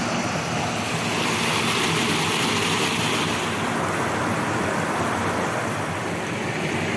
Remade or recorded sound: recorded